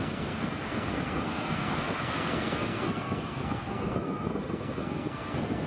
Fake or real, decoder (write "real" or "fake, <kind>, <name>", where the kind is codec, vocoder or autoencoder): fake, codec, SNAC